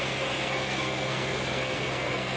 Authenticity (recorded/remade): remade